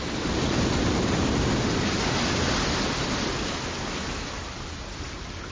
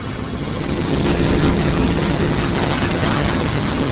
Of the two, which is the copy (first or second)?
second